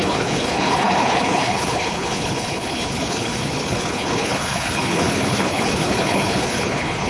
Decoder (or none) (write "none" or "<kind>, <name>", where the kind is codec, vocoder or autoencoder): codec, HILCodec